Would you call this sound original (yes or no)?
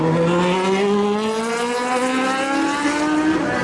yes